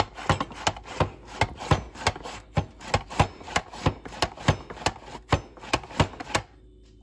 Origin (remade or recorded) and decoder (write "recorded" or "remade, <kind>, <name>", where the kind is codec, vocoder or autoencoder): recorded